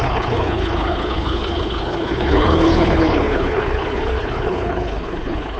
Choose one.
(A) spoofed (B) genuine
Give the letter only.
A